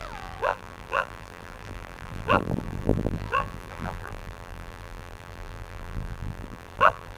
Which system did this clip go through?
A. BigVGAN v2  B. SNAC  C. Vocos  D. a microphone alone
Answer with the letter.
A